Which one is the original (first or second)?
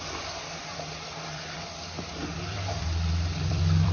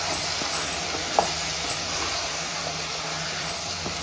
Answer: second